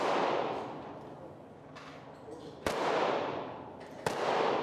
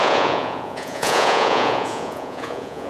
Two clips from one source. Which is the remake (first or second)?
second